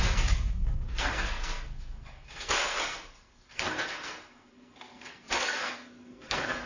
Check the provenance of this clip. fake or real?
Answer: fake